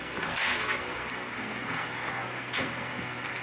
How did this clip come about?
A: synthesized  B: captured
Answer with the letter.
A